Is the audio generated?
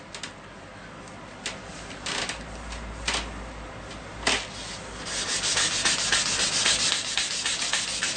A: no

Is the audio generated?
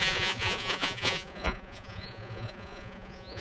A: yes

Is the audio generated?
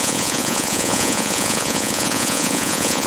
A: yes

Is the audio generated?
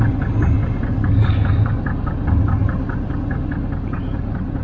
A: no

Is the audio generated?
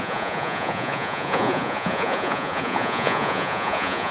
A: yes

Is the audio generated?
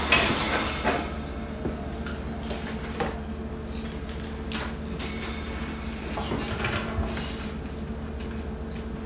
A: no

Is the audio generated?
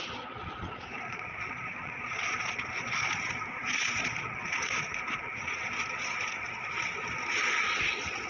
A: yes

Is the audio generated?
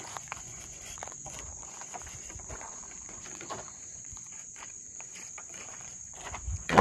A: yes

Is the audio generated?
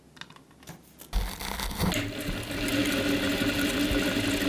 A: no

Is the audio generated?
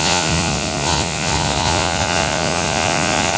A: yes